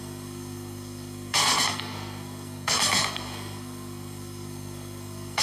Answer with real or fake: fake